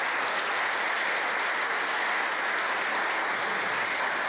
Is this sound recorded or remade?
recorded